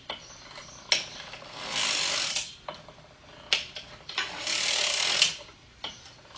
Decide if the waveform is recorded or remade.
recorded